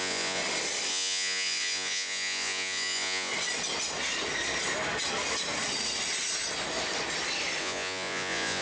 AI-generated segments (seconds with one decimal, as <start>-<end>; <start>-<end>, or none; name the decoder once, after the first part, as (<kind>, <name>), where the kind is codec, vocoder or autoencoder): 0.0-0.4 (vocoder, Vocos); 0.9-3.3; 7.6-8.6